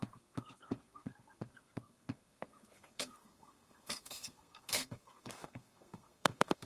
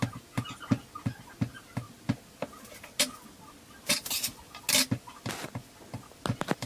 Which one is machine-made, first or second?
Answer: first